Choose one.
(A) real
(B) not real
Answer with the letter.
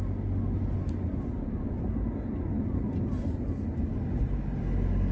A